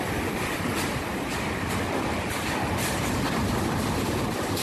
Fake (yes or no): yes